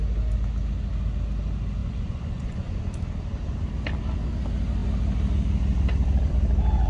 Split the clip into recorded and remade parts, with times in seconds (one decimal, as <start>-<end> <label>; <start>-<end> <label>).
0.0-1.8 recorded; 1.8-2.8 remade; 2.8-6.9 recorded